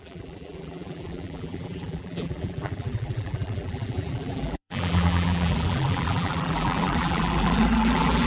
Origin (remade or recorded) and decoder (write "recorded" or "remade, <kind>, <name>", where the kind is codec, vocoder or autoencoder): remade, vocoder, BigVGAN v2